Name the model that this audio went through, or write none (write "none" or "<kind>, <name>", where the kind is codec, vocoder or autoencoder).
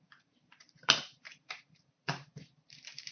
vocoder, BigVGAN v2